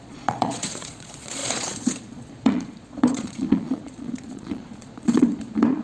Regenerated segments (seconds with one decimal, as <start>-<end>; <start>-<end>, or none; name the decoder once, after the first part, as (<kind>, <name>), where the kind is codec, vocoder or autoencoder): 0.0-5.8 (vocoder, Vocos)